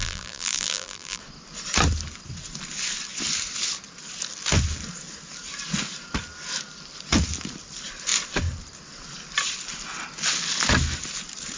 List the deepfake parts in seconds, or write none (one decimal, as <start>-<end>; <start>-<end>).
0.0-1.2